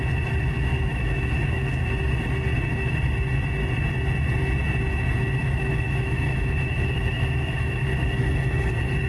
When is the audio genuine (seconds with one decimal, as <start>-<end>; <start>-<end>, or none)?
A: 0.0-0.7; 1.7-5.4; 8.7-9.1